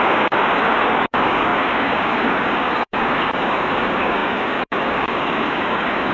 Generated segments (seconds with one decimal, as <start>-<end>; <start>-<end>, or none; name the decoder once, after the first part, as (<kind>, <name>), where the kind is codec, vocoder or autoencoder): 0.0-6.1 (codec, DAC)